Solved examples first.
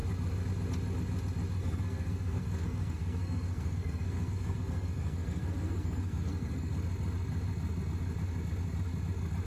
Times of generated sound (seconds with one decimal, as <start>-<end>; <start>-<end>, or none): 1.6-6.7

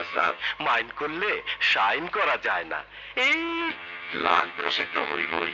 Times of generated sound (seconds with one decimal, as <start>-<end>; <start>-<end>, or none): 0.0-0.4; 3.7-5.5

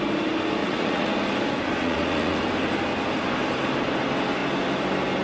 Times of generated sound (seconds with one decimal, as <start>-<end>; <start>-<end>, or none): 0.6-1.1; 1.8-2.4